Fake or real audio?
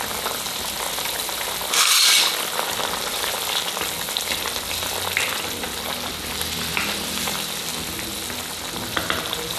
real